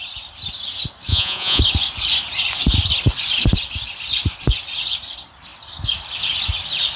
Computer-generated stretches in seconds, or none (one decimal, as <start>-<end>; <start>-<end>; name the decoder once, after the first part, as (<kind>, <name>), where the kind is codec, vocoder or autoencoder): 1.1-1.6 (vocoder, Vocos)